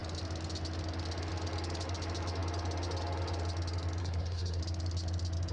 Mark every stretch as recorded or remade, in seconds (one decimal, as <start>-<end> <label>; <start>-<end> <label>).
0.0-4.0 recorded; 4.0-4.6 remade; 4.6-5.5 recorded